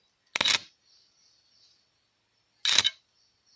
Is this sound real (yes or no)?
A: yes